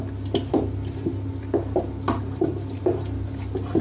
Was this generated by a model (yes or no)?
no